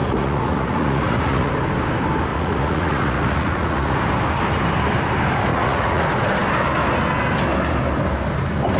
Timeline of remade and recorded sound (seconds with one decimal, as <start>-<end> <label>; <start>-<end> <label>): 0.0-1.5 remade; 1.5-2.3 recorded; 2.3-4.0 remade; 4.0-5.5 recorded; 5.5-6.0 remade; 6.0-8.8 recorded